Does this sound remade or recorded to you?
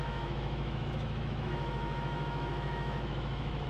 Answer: remade